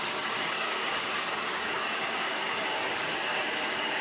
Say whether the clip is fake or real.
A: fake